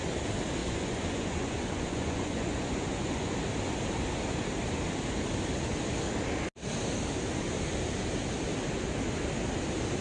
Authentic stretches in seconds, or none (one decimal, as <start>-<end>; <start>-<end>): 0.0-0.6; 3.3-10.0